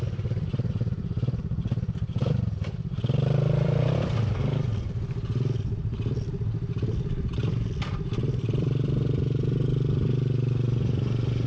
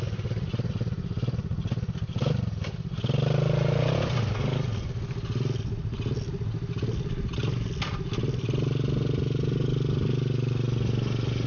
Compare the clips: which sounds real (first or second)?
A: second